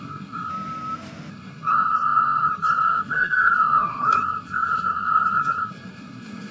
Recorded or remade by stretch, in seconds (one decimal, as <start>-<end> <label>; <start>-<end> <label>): 0.0-0.5 remade; 0.5-1.3 recorded; 1.3-6.5 remade